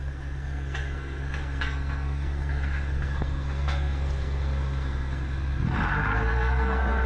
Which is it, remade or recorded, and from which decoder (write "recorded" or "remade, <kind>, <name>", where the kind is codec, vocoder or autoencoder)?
remade, codec, SNAC